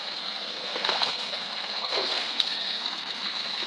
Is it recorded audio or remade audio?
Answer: remade